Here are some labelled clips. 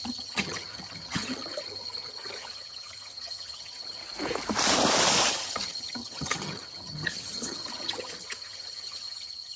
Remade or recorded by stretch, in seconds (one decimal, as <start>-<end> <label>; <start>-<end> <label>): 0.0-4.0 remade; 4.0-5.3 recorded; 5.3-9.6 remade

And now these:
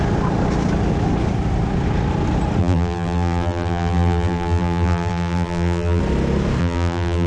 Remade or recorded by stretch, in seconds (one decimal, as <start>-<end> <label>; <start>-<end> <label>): 0.0-2.6 recorded; 2.6-6.0 remade; 6.0-6.6 recorded; 6.6-7.3 remade

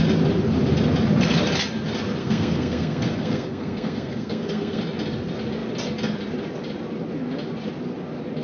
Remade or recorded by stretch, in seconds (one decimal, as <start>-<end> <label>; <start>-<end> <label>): 0.0-2.2 recorded; 2.2-4.8 remade; 4.8-8.4 recorded